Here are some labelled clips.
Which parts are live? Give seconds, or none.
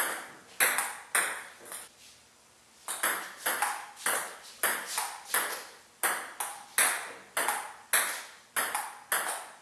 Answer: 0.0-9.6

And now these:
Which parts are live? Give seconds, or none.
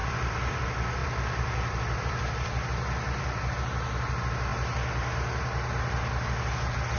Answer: 0.6-1.0; 3.5-7.0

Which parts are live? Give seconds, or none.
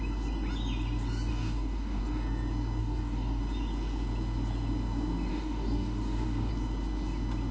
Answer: 0.0-1.3; 2.0-2.8; 3.4-5.3; 6.5-7.5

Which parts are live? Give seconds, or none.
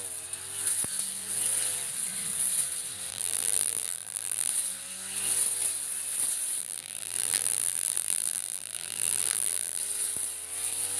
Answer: 0.0-3.1; 4.5-6.6; 9.8-11.0